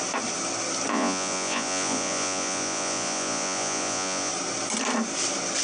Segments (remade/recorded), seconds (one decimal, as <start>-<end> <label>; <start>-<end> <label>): 0.0-0.9 recorded; 0.9-4.3 remade; 4.3-5.6 recorded